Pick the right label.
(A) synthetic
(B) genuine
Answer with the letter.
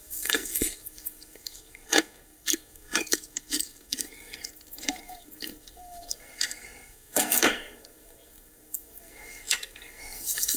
A